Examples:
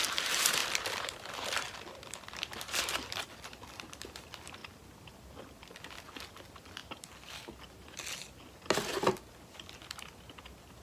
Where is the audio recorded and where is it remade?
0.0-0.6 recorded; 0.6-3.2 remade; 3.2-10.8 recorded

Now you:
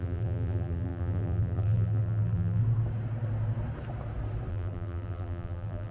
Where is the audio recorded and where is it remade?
0.0-2.6 remade; 2.6-4.5 recorded; 4.5-5.9 remade

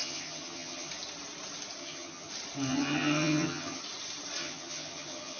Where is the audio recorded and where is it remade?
0.0-0.9 remade; 0.9-1.8 recorded; 1.8-2.3 remade; 2.3-2.7 recorded; 2.7-3.8 remade; 3.8-4.4 recorded; 4.4-5.4 remade

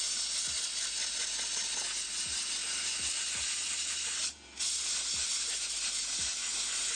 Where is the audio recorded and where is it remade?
0.0-7.0 recorded

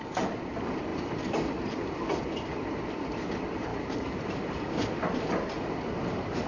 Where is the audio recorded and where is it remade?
0.0-0.9 recorded; 0.9-2.2 remade; 2.2-3.7 recorded; 3.7-4.9 remade; 4.9-6.5 recorded